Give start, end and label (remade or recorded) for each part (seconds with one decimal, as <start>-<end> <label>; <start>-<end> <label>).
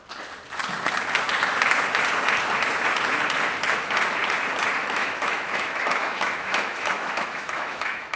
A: 0.0-4.8 recorded; 4.8-8.2 remade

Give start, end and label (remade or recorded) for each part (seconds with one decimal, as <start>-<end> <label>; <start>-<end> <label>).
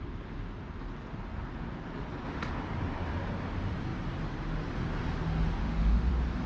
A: 0.0-5.6 recorded; 5.6-6.1 remade; 6.1-6.5 recorded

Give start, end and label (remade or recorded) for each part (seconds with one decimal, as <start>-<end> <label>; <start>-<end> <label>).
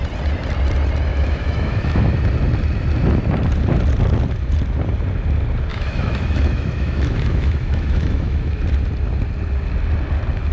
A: 0.0-1.1 recorded; 1.1-2.0 remade; 2.0-5.7 recorded; 5.7-8.6 remade; 8.6-10.5 recorded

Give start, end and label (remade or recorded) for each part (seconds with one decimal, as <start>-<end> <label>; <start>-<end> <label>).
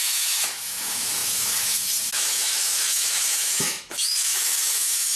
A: 0.0-5.2 remade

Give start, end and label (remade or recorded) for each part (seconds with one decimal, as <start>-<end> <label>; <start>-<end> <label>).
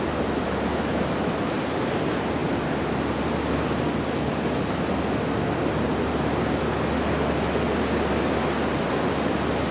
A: 0.0-0.7 recorded; 0.7-1.3 remade; 1.3-9.7 recorded